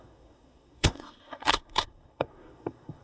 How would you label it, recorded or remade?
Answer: remade